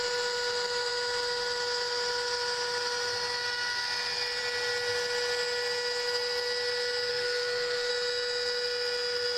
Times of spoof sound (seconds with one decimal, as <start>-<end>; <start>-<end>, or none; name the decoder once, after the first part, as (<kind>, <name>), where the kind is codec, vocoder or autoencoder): 7.1-7.9 (codec, SNAC)